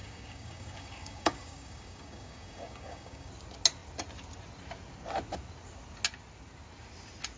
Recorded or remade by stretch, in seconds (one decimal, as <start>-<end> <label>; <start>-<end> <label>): 0.0-3.3 remade; 3.3-7.4 recorded